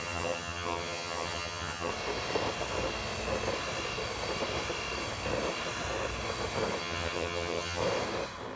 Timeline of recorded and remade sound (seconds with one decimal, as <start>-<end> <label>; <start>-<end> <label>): 0.0-1.9 remade; 1.9-6.8 recorded; 6.8-7.8 remade; 7.8-8.6 recorded